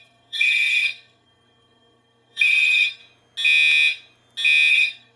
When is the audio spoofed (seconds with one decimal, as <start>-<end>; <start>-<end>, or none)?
0.0-3.0; 4.7-5.2